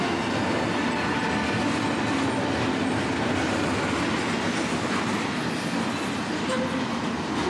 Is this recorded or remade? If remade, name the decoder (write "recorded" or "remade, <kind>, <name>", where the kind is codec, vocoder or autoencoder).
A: recorded